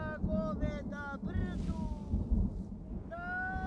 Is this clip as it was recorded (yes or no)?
yes